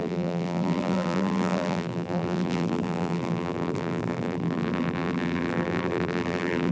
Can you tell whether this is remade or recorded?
remade